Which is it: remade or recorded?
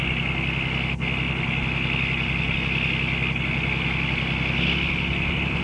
recorded